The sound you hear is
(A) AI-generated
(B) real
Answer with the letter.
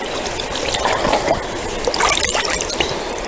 B